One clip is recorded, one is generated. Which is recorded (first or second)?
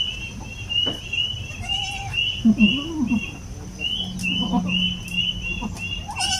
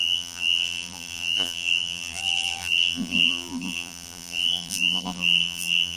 first